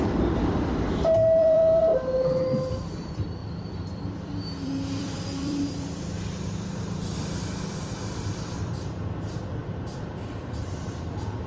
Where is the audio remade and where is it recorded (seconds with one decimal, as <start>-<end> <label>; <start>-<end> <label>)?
0.0-1.9 remade; 1.9-2.7 recorded; 2.7-9.6 remade; 9.6-10.4 recorded; 10.4-11.5 remade